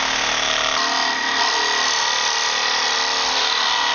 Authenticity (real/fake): real